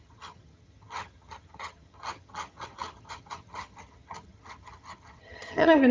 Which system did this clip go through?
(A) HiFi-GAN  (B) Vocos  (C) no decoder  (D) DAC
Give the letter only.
A